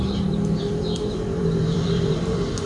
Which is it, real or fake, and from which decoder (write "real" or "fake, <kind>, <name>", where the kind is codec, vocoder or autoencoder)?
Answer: fake, vocoder, BigVGAN v2